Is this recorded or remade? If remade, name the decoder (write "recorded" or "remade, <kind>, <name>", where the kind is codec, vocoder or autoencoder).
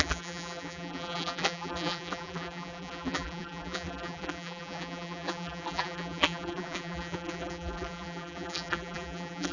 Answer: remade, vocoder, BigVGAN v2